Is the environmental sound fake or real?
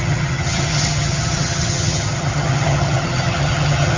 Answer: fake